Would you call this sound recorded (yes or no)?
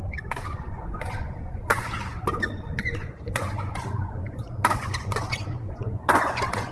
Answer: no